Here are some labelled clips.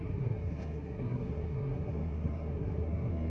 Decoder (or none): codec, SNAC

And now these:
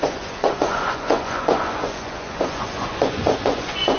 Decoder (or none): vocoder, Vocos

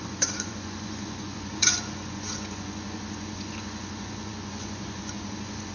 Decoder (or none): vocoder, Vocos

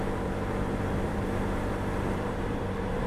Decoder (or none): vocoder, BigVGAN v2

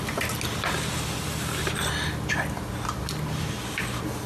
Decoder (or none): none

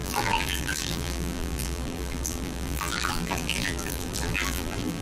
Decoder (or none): vocoder, BigVGAN v2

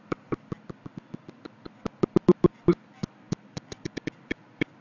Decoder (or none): vocoder, BigVGAN v2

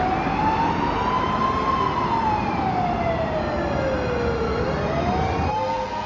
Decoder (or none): none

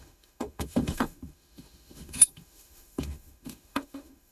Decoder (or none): autoencoder, DAC-VAE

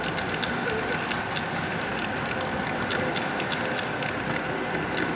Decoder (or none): none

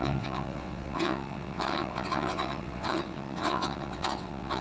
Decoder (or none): vocoder, WaveNeXt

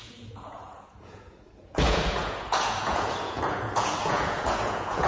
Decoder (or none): vocoder, Vocos